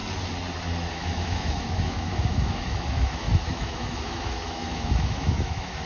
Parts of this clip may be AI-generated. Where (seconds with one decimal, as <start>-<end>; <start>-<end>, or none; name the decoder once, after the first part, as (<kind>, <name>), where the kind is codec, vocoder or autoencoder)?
0.9-5.9 (autoencoder, DAC-VAE)